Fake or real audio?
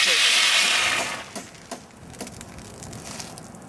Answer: real